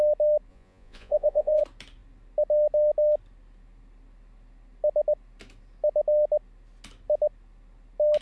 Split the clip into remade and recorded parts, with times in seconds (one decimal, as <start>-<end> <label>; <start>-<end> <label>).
0.0-0.5 recorded; 0.5-1.6 remade; 1.6-8.2 recorded